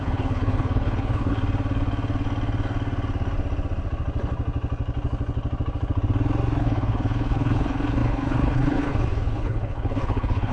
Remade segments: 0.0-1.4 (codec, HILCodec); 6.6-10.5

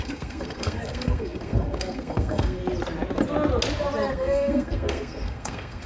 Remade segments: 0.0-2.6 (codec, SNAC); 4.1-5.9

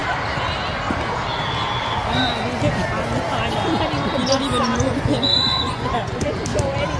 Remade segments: 4.7-6.4 (vocoder, Vocos)

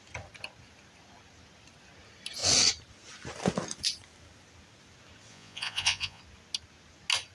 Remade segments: 5.3-6.2 (vocoder, Vocos)